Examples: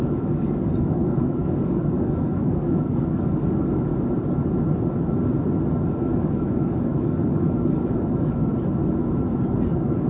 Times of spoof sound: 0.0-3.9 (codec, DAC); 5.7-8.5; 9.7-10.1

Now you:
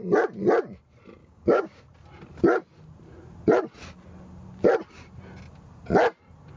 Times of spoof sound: 1.2-1.8 (codec, DAC)

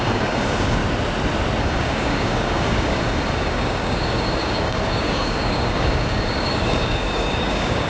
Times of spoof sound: 0.0-0.8 (codec, DAC); 1.6-7.9

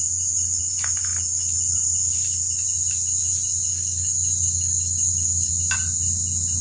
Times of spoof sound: 3.7-5.5 (codec, DAC)